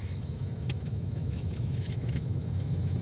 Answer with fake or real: fake